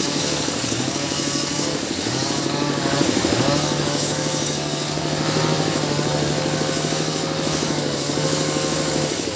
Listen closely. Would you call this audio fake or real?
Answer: fake